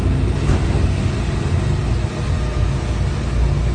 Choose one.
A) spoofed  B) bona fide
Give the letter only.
B